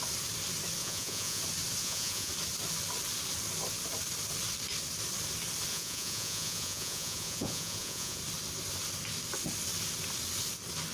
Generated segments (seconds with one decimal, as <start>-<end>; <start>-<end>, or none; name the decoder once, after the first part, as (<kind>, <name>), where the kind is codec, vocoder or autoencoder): 0.8-1.4 (vocoder, Vocos); 1.8-2.3; 5.7-8.2